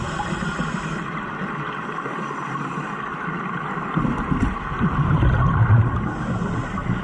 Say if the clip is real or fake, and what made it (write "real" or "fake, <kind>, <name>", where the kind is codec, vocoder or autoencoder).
real